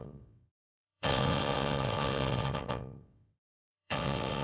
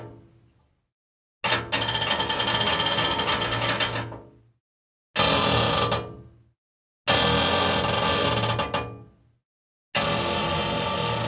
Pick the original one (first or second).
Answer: second